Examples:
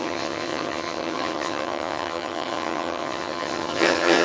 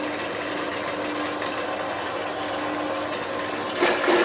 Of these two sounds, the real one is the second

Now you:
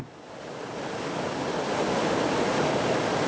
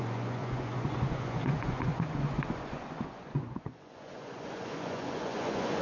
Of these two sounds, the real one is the first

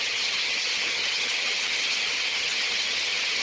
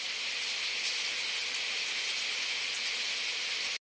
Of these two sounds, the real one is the second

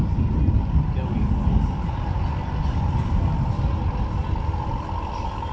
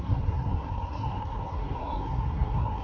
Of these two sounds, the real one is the first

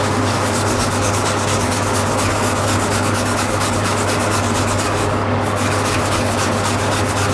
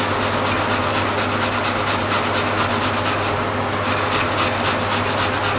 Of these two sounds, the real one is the second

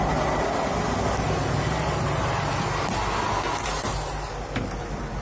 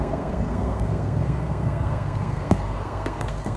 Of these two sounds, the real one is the first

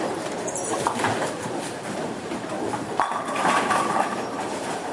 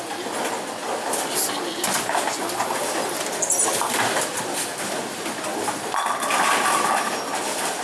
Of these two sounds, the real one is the second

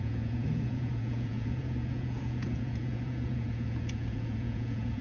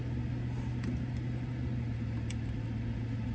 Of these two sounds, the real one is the second